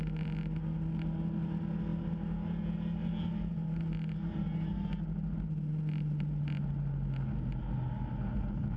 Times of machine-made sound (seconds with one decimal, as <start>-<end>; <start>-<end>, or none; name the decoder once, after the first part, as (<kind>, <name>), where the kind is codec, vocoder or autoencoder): none